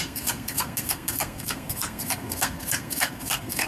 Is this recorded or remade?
remade